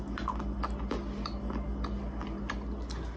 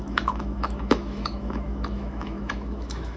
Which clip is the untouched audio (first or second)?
first